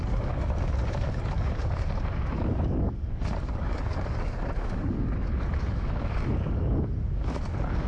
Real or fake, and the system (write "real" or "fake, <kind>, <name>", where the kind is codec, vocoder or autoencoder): fake, codec, DAC